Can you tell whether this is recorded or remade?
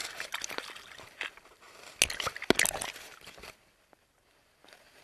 recorded